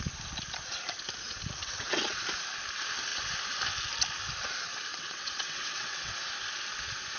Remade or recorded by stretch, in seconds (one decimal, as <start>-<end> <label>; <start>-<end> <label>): 0.0-1.6 recorded; 1.6-2.2 remade; 2.2-4.9 recorded; 4.9-6.1 remade; 6.1-7.2 recorded